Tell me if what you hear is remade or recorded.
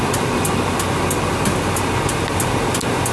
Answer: recorded